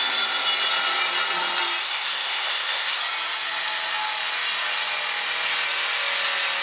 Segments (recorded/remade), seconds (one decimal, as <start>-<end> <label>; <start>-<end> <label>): 0.0-1.8 recorded; 1.8-3.0 remade; 3.0-6.6 recorded